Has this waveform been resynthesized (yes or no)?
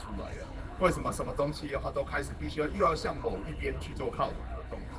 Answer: yes